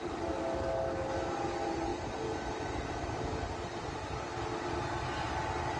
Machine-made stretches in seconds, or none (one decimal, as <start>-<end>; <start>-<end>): none